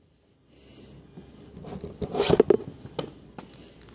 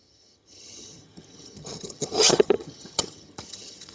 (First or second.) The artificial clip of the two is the second